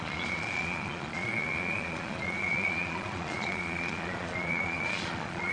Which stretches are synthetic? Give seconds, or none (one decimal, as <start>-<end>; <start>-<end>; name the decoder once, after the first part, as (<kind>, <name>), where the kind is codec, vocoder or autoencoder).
0.0-5.5 (vocoder, Vocos)